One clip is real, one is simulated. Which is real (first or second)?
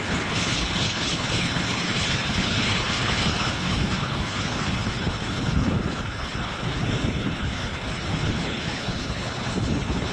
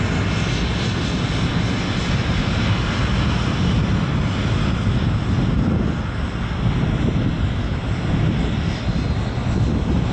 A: second